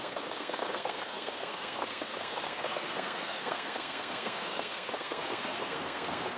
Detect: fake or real fake